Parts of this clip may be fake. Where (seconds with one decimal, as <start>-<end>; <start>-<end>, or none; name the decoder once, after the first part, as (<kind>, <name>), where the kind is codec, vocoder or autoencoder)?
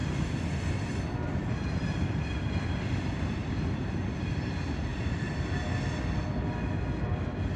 0.0-3.9 (vocoder, BigVGAN v2); 4.9-5.5